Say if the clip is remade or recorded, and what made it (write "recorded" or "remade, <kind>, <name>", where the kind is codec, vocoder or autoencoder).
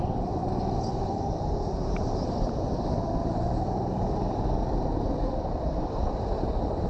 remade, vocoder, BigVGAN v2